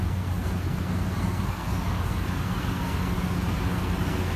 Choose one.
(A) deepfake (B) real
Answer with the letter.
A